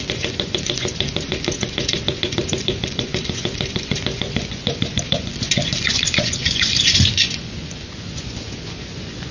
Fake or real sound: fake